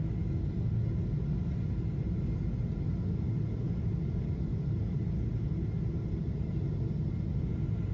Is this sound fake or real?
real